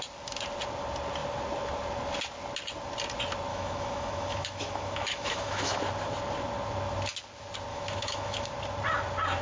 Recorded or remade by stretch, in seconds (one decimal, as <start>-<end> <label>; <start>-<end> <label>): 0.0-3.5 recorded; 3.5-5.8 remade; 5.8-7.7 recorded; 7.7-8.5 remade; 8.5-9.4 recorded